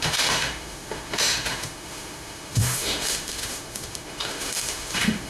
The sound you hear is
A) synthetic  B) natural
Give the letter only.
A